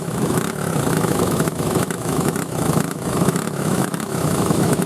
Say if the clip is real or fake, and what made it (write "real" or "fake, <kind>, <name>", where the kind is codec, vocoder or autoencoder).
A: fake, autoencoder, DAC-VAE